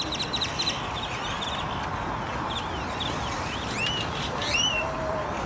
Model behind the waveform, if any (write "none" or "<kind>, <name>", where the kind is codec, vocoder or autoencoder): vocoder, BigVGAN v2